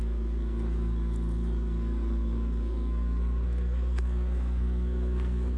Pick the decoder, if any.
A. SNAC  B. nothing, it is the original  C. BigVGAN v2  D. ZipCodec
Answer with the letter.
A